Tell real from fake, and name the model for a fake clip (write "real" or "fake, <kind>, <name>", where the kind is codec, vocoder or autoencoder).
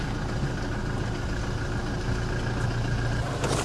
real